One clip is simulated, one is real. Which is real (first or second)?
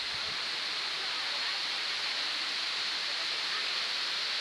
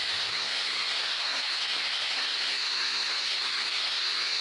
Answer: first